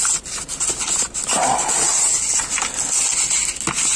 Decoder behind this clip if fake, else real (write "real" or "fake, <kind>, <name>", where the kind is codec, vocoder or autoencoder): real